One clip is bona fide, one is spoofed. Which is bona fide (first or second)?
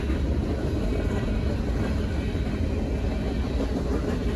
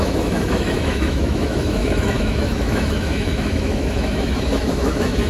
first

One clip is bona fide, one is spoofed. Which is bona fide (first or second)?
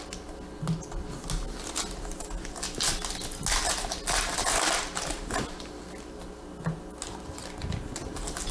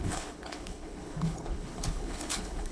first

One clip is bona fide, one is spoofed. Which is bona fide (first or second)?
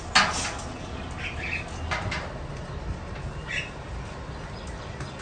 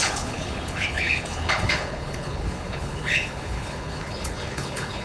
first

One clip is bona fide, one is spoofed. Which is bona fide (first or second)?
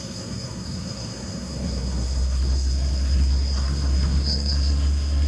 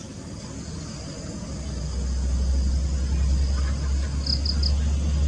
second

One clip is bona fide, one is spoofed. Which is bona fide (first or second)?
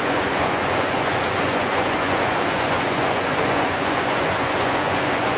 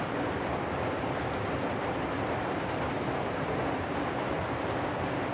second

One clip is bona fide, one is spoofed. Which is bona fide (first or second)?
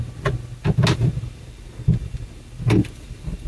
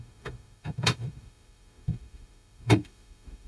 first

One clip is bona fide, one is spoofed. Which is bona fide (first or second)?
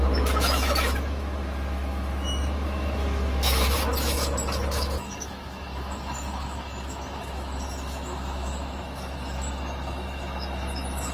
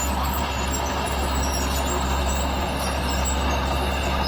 second